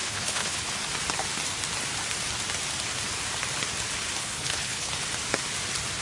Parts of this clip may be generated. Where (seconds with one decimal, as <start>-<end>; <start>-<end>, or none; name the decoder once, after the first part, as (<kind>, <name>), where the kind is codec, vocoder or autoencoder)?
0.0-0.6 (codec, HILCodec); 4.2-4.9